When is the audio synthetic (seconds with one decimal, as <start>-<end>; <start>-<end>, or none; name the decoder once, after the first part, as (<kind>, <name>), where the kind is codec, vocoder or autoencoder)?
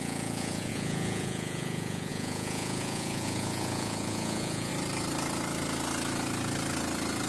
0.0-4.7 (vocoder, Vocos)